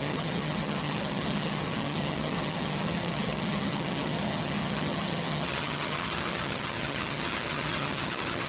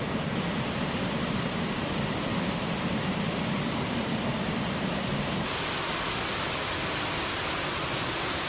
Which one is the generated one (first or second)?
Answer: first